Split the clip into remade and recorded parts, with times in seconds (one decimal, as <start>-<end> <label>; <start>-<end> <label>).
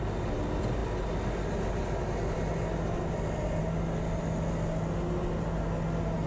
0.0-6.3 recorded